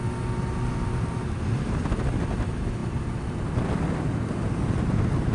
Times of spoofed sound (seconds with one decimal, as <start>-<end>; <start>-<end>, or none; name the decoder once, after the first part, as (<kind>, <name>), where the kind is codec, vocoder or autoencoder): 2.8-4.5 (vocoder, BigVGAN v2)